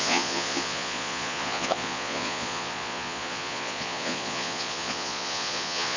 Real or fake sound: fake